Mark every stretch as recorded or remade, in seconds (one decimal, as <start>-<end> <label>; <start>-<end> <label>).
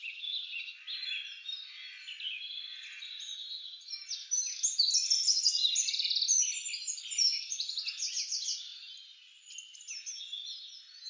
0.0-11.1 recorded